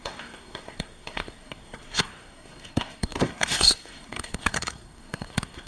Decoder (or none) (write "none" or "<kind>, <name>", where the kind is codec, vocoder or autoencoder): codec, SNAC